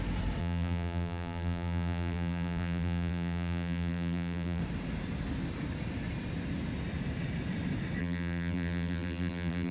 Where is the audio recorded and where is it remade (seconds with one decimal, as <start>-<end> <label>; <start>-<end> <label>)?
0.0-0.4 recorded; 0.4-4.6 remade; 4.6-8.0 recorded; 8.0-9.7 remade